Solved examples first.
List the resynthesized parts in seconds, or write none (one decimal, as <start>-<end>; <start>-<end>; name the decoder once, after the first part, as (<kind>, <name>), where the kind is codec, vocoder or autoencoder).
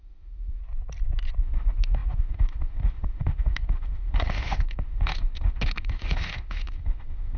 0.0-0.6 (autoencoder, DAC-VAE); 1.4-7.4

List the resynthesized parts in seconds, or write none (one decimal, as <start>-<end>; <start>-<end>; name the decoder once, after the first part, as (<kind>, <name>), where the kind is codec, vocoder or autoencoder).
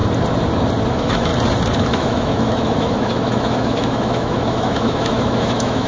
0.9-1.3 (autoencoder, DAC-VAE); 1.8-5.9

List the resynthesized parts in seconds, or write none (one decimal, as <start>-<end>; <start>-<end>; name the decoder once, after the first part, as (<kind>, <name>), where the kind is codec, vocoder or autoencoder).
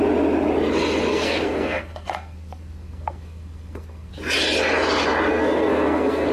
1.1-4.1 (codec, SNAC); 5.3-6.3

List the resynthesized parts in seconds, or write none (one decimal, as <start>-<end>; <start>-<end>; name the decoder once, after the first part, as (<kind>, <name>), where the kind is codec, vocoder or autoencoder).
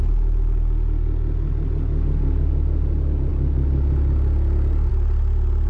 none